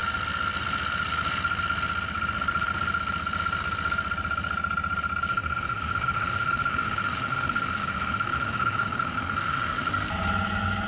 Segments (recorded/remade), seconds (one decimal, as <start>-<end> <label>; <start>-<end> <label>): 0.0-5.3 recorded; 5.3-9.9 remade; 9.9-10.9 recorded